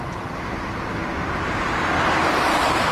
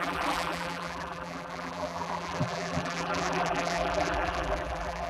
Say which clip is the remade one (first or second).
second